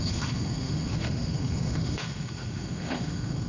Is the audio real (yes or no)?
no